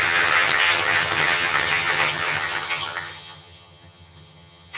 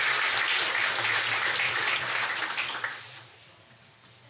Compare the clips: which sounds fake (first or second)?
first